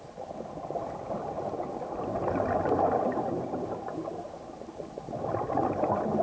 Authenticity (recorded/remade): recorded